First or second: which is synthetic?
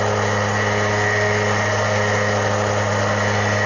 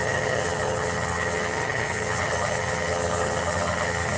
second